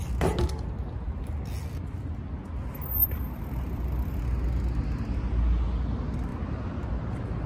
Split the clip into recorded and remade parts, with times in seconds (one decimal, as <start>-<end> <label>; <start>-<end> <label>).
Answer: 0.0-3.0 recorded; 3.0-4.2 remade; 4.2-7.5 recorded